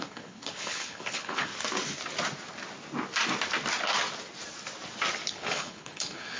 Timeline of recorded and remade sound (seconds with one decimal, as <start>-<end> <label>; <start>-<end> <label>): 0.0-1.5 remade; 1.5-5.3 recorded; 5.3-6.4 remade